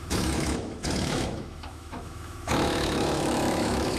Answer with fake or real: fake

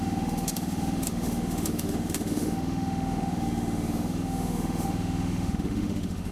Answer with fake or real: fake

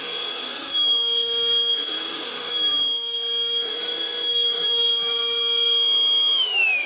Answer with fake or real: fake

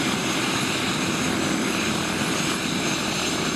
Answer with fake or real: real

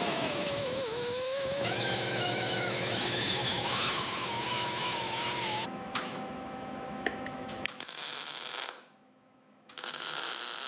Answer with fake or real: fake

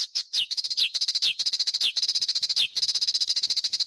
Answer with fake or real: fake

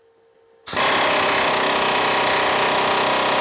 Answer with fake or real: real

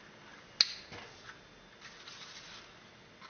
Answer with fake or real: real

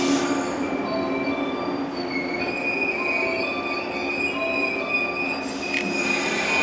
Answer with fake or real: real